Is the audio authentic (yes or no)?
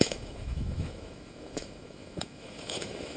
no